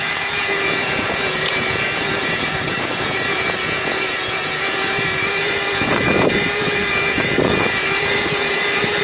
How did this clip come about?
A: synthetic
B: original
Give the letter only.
A